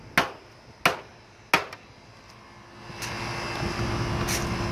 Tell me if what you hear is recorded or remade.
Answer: recorded